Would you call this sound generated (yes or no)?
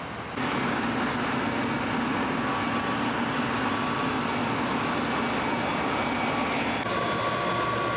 no